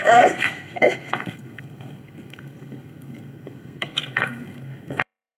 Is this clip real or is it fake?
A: fake